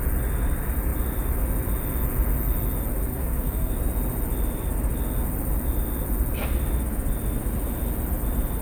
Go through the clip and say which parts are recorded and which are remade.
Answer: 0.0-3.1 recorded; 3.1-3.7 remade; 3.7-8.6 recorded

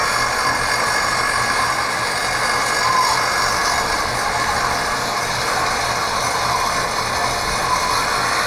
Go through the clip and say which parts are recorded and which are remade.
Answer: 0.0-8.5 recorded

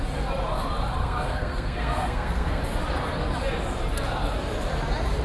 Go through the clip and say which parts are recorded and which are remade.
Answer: 0.0-1.0 recorded; 1.0-2.6 remade; 2.6-5.2 recorded

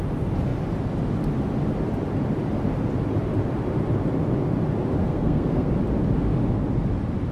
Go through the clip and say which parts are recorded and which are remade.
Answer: 0.0-5.0 recorded; 5.0-5.7 remade; 5.7-7.3 recorded